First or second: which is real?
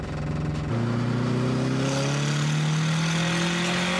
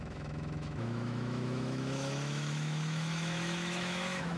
first